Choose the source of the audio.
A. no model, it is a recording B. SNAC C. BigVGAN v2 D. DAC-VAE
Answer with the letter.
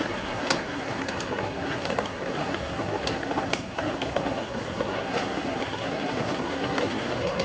B